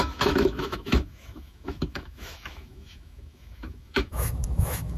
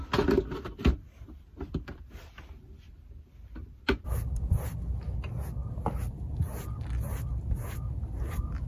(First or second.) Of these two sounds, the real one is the second